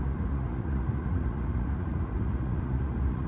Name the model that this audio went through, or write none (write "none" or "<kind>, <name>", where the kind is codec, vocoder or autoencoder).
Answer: vocoder, Vocos